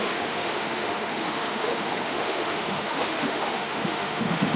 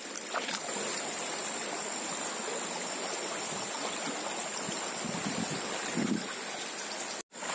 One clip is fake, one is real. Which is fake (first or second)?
first